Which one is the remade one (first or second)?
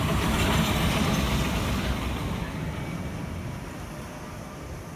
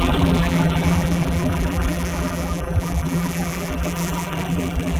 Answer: second